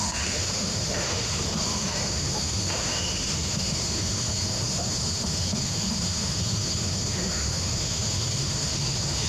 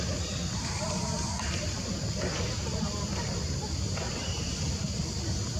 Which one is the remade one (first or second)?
first